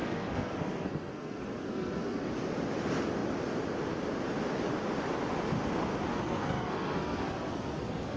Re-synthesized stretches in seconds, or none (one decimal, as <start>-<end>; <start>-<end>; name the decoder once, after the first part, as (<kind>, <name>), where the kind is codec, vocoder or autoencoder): 0.0-2.3 (codec, SNAC); 6.1-8.2